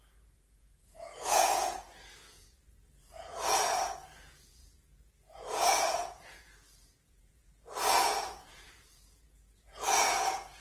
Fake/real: fake